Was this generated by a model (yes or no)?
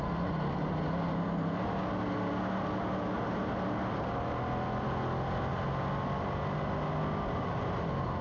no